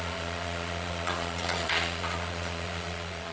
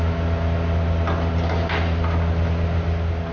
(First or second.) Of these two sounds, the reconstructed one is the first